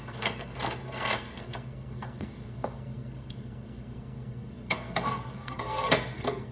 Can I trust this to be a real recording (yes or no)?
no